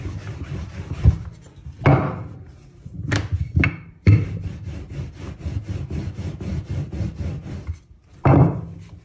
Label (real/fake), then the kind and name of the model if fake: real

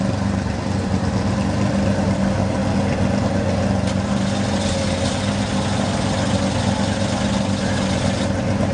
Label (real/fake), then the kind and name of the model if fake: real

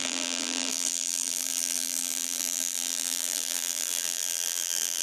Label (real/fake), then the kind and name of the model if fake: fake, vocoder, BigVGAN v2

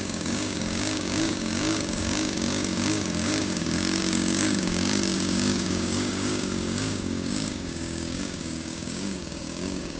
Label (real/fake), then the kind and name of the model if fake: fake, codec, DAC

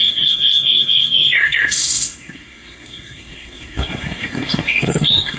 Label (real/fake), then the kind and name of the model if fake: fake, codec, SNAC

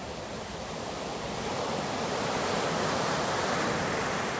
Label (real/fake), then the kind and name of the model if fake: real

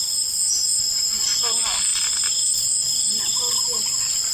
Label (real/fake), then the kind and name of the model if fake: real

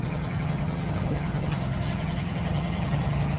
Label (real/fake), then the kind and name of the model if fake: fake, vocoder, HiFi-GAN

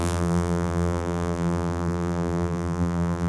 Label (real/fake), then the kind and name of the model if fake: fake, vocoder, BigVGAN v2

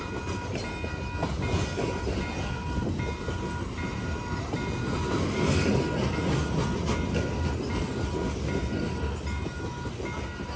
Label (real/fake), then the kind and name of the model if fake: real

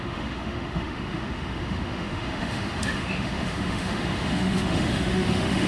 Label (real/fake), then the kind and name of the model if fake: fake, autoencoder, DAC-VAE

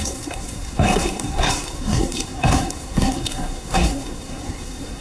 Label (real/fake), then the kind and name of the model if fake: fake, codec, SNAC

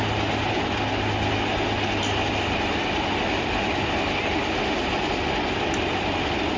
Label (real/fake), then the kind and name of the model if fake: real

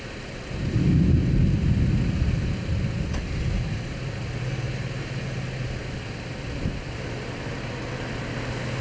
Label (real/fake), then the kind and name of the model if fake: real